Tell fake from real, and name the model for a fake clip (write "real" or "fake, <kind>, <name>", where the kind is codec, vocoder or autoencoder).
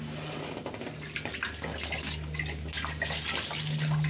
real